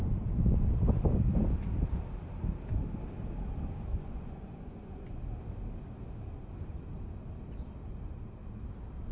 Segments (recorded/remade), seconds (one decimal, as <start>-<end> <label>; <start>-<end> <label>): 0.0-3.9 recorded; 3.9-5.2 remade; 5.2-9.1 recorded